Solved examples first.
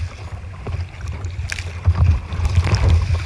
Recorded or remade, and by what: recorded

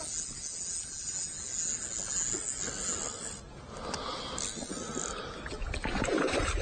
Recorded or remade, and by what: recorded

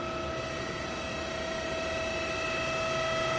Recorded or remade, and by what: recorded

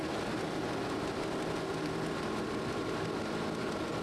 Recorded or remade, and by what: recorded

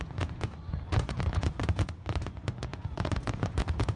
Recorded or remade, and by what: remade, vocoder, Vocos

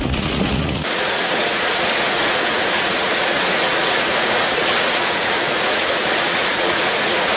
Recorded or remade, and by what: remade, vocoder, Vocos